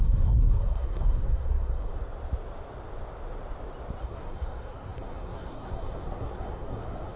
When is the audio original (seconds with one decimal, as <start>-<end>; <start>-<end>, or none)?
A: 1.9-4.0